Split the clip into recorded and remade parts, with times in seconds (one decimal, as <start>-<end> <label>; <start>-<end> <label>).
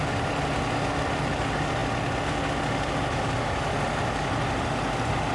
0.0-5.3 recorded